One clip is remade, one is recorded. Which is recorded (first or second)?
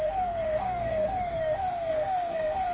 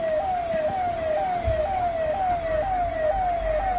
second